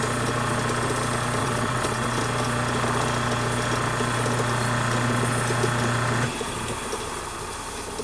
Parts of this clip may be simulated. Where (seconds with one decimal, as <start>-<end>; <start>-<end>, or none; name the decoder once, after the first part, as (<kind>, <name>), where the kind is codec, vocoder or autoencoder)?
1.4-2.2 (vocoder, WaveNeXt)